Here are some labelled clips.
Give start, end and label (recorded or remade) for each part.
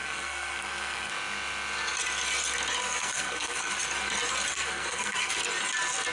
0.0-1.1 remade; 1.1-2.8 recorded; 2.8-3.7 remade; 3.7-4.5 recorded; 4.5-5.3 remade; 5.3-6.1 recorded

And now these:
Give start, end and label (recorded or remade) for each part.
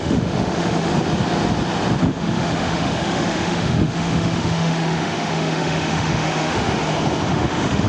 0.0-0.9 remade; 0.9-2.0 recorded; 2.0-6.8 remade; 6.8-7.3 recorded; 7.3-7.9 remade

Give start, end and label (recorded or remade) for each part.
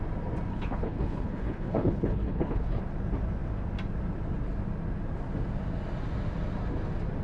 0.0-0.5 recorded; 0.5-2.8 remade; 2.8-7.2 recorded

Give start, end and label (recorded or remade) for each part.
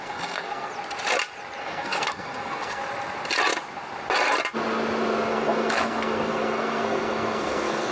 0.0-0.7 remade; 0.7-1.6 recorded; 1.6-2.8 remade; 2.8-5.3 recorded; 5.3-7.9 remade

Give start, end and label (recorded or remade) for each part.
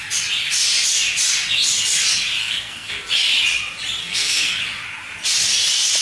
0.0-2.4 recorded; 2.4-3.1 remade; 3.1-4.0 recorded; 4.0-4.6 remade; 4.6-6.0 recorded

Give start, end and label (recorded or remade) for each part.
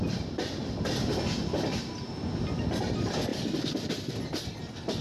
0.0-0.6 remade; 0.6-3.3 recorded; 3.3-5.0 remade